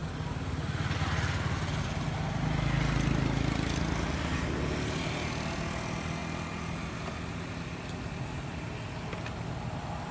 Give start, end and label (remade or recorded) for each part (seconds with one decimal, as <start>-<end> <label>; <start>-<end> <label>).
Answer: 0.0-10.1 recorded